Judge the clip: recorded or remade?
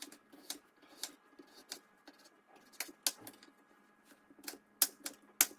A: recorded